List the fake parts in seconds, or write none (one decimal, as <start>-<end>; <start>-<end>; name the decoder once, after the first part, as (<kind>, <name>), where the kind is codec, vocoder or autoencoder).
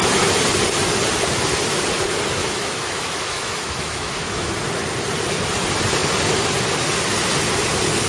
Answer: 2.4-4.5 (autoencoder, DAC-VAE)